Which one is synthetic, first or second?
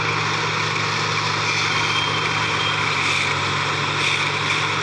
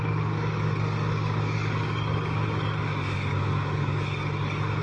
second